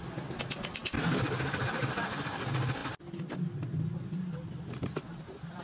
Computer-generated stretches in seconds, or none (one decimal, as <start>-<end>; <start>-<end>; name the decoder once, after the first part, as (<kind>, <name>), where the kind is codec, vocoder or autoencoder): none